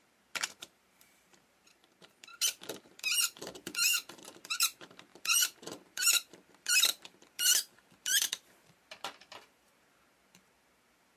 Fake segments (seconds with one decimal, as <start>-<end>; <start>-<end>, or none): 0.0-2.3; 2.8-11.2